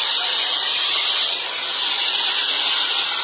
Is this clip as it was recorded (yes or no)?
yes